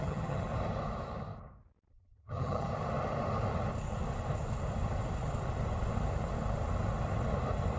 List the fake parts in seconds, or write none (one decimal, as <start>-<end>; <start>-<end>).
0.0-0.5; 1.9-2.7